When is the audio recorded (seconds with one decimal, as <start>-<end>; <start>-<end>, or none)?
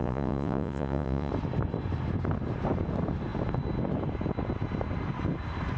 1.3-5.8